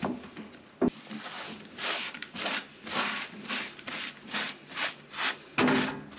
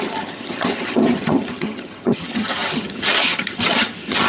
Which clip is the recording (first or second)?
first